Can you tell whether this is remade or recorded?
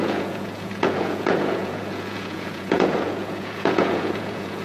remade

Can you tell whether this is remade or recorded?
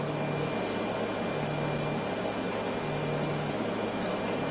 recorded